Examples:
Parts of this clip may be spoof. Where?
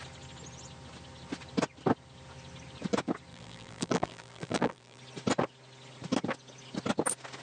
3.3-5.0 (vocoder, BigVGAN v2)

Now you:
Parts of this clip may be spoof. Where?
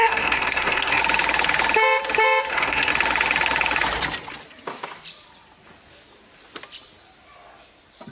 0.0-1.0 (codec, SNAC); 2.5-2.9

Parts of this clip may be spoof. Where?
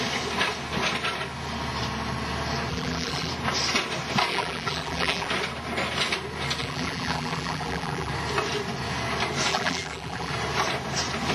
2.7-3.3 (vocoder, BigVGAN v2); 4.3-5.3; 6.6-8.1; 9.5-10.3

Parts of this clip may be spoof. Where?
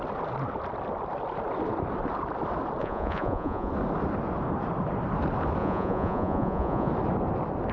2.8-3.7 (vocoder, Vocos); 5.6-6.9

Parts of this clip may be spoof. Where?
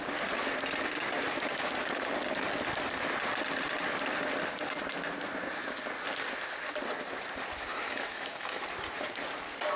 7.7-8.6 (autoencoder, DAC-VAE)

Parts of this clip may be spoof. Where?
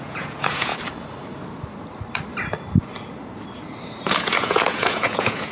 0.0-0.7 (vocoder, Vocos); 4.0-5.5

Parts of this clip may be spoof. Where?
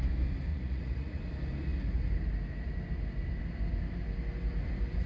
0.5-1.2 (vocoder, Vocos)